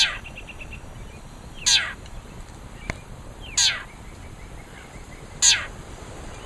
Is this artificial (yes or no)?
no